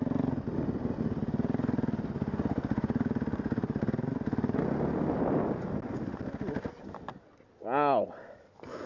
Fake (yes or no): no